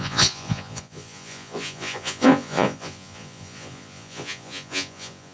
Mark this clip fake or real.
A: fake